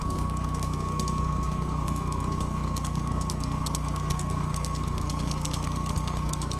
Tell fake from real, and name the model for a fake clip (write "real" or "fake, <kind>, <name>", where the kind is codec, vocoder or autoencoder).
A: fake, codec, SNAC